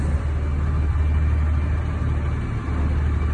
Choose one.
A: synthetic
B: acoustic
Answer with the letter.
B